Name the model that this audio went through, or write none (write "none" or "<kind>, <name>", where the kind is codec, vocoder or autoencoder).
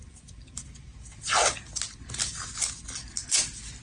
none